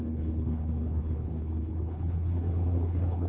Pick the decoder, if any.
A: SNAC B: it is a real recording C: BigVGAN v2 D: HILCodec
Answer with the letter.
D